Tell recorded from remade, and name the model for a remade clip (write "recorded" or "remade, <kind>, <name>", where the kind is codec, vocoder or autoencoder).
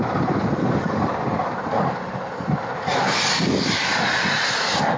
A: recorded